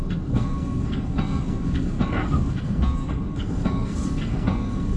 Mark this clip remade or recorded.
remade